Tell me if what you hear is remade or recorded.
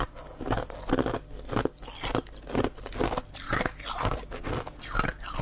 recorded